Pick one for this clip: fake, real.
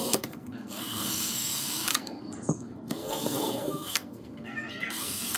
fake